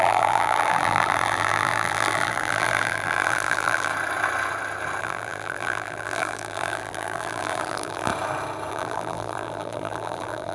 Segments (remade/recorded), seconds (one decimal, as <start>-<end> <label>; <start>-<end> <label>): 0.0-3.9 remade; 3.9-5.0 recorded; 5.0-8.1 remade; 8.1-8.7 recorded; 8.7-10.5 remade